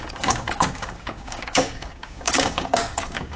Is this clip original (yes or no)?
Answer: no